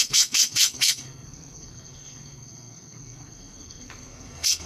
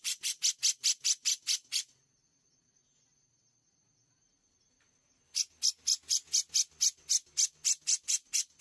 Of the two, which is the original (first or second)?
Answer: second